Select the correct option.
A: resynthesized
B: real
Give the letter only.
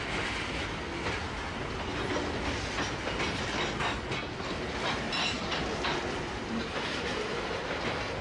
B